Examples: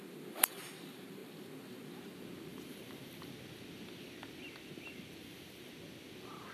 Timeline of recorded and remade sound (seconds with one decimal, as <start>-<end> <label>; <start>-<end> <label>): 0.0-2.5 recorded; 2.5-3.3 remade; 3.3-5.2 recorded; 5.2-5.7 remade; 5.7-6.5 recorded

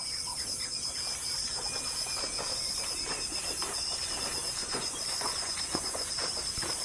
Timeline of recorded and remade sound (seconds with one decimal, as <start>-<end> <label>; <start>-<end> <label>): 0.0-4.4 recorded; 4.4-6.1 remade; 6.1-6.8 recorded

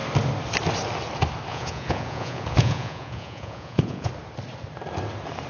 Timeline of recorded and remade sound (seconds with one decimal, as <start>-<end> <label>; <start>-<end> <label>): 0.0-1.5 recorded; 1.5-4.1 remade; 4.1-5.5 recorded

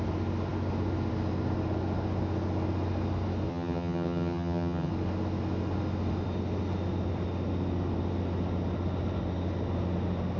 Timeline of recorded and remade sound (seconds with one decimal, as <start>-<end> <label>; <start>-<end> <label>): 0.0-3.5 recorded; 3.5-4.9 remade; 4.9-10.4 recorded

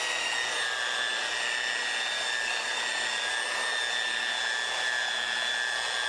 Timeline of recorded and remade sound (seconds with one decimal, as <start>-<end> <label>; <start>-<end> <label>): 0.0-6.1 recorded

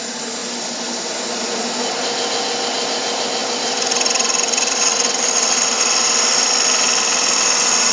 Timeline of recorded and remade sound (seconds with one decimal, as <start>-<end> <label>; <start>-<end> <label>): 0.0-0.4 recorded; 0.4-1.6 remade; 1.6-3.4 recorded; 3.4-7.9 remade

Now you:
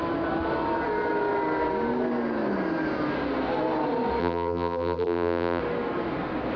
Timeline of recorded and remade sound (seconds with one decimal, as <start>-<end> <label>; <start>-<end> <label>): 0.0-4.2 recorded; 4.2-5.6 remade; 5.6-6.6 recorded